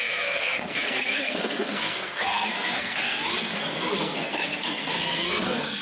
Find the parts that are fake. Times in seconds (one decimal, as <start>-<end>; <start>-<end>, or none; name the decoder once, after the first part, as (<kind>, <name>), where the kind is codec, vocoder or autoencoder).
0.0-5.8 (codec, SNAC)